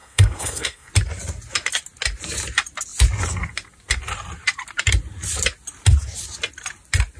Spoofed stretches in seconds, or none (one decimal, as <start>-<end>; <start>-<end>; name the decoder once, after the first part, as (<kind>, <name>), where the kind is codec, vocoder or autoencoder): 0.0-0.9 (codec, SNAC)

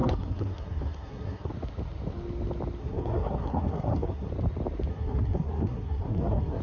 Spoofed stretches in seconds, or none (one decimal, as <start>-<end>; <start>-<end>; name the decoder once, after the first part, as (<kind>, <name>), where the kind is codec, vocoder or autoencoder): 0.0-1.5 (codec, SNAC); 2.8-4.3; 4.9-6.6

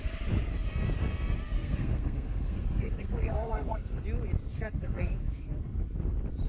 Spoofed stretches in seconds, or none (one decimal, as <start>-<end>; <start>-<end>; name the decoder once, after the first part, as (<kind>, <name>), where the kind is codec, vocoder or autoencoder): 1.5-4.0 (codec, SNAC); 4.5-5.8

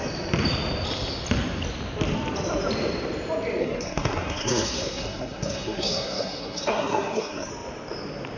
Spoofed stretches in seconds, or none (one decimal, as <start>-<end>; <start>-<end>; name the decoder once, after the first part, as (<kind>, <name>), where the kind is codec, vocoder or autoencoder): 3.6-7.5 (codec, SNAC)

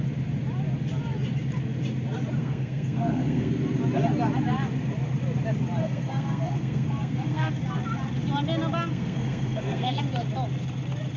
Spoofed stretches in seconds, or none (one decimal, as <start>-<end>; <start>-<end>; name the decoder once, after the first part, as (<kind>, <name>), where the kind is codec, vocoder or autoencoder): 2.4-3.5 (codec, SNAC); 5.8-7.5; 8.9-10.0

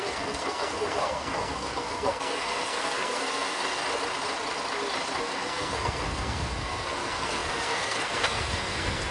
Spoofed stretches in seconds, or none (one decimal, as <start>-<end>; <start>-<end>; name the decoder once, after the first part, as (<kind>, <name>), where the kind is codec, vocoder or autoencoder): 0.0-3.6 (codec, SNAC); 5.2-9.1

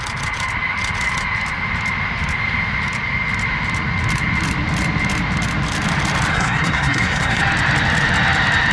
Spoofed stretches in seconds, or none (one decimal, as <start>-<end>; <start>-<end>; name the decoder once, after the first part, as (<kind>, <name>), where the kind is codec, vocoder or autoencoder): 6.3-7.4 (codec, SNAC)

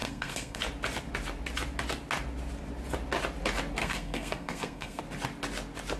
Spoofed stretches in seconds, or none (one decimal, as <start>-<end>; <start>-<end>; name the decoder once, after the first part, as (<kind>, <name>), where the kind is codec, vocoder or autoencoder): 0.0-0.6 (codec, SNAC); 3.8-5.0